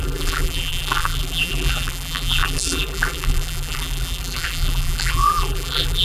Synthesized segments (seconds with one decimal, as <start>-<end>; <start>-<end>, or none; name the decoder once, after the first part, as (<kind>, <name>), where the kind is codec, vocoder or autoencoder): 0.0-6.0 (vocoder, BigVGAN v2)